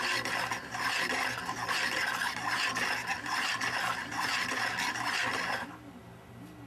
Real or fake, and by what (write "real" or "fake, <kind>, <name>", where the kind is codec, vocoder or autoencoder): real